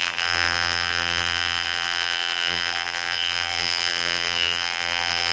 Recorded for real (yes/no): no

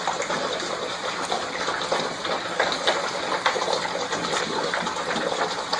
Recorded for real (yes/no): yes